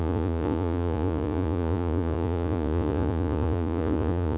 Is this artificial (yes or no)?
yes